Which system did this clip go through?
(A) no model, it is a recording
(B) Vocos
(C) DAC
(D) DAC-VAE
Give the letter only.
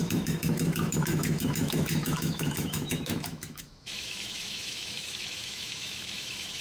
D